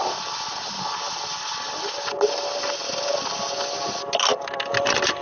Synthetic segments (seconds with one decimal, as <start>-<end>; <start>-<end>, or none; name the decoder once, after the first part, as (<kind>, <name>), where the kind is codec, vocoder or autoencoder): none